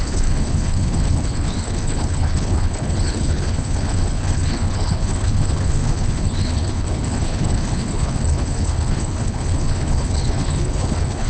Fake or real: fake